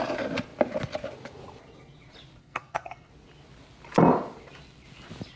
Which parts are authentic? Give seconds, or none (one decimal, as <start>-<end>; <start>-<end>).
0.0-2.4; 3.1-5.4